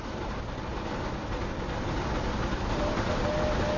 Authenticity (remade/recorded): recorded